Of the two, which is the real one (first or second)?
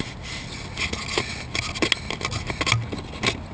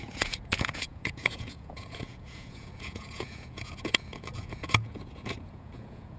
first